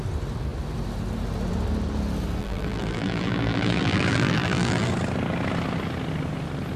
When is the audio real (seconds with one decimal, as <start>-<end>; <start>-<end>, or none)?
0.0-2.4; 4.9-6.8